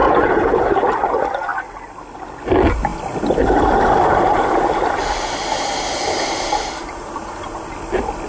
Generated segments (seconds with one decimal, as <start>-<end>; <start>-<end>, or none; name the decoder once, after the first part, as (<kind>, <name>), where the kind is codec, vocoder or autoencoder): 0.0-0.6 (vocoder, Vocos)